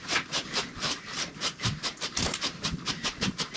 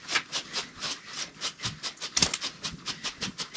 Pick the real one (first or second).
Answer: second